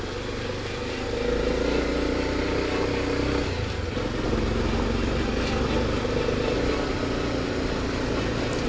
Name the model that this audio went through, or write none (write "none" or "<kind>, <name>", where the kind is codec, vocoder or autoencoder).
none